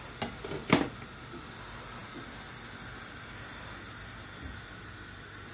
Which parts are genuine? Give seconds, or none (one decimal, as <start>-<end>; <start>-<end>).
0.0-5.5